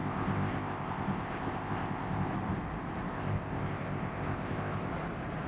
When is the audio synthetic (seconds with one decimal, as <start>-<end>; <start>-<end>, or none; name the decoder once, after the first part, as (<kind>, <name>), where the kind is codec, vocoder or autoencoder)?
0.0-2.3 (codec, ZipCodec); 3.1-4.9

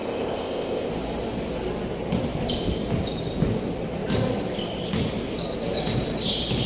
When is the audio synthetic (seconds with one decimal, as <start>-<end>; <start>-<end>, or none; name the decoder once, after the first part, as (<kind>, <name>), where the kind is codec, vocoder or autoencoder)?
0.0-0.9 (codec, ZipCodec)

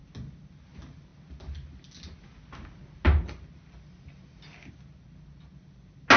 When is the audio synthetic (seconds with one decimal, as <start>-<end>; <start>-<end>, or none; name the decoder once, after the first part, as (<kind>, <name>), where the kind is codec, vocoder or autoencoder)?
none

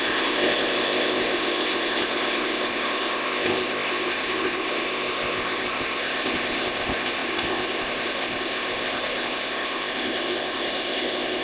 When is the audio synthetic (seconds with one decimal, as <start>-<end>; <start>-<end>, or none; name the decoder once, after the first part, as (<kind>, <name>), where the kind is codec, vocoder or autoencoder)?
0.0-11.4 (codec, ZipCodec)